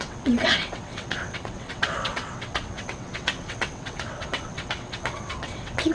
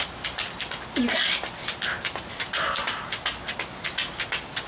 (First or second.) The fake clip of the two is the first